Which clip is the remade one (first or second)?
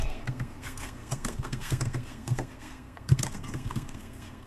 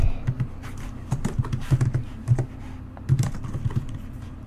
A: first